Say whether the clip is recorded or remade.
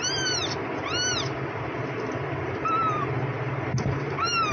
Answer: recorded